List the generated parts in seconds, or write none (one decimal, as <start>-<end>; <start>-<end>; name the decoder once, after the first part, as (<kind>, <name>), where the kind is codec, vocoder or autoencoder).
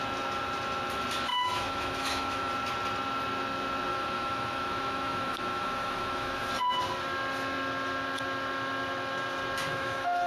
1.3-2.5 (autoencoder, DAC-VAE); 3.9-6.5; 9.7-10.3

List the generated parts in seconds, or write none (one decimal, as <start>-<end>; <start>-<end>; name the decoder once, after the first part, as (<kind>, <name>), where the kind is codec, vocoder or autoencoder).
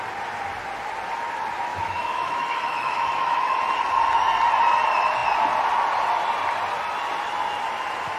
1.7-3.6 (autoencoder, DAC-VAE)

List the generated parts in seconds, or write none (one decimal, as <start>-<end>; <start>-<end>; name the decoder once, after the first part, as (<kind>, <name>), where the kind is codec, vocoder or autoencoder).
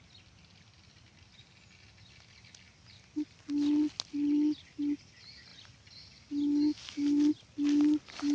none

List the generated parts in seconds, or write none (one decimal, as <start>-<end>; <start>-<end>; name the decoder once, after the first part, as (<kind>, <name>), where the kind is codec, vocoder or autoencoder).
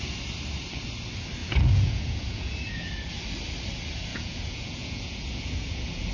1.4-2.9 (vocoder, Vocos); 4.1-6.1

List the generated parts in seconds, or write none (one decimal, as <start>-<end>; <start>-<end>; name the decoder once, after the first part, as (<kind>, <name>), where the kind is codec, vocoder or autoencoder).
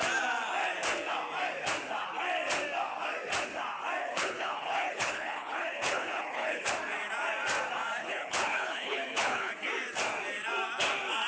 4.0-6.7 (codec, HILCodec); 8.0-9.5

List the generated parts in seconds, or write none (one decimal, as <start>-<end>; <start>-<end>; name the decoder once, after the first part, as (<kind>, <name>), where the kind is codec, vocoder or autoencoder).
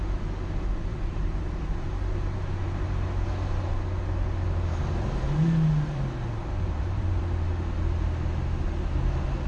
0.9-1.5 (vocoder, BigVGAN v2); 6.4-7.2